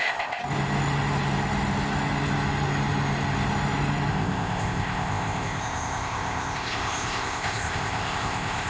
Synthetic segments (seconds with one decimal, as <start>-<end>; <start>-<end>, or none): 0.0-0.4; 4.1-8.7